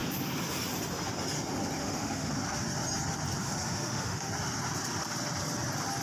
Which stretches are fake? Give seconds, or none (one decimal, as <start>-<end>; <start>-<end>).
1.8-2.4; 3.4-4.3